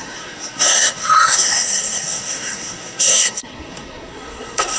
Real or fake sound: fake